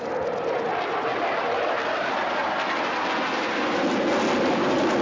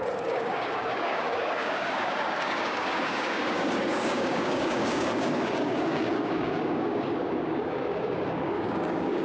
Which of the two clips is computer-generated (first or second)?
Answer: second